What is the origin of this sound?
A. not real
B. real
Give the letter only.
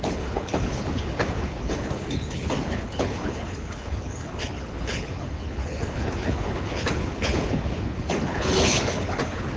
A